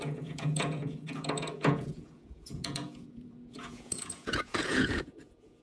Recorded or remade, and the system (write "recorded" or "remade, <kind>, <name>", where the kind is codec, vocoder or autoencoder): remade, vocoder, Vocos